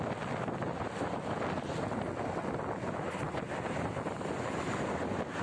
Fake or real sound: real